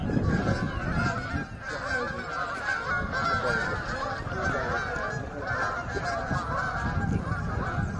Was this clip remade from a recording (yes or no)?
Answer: no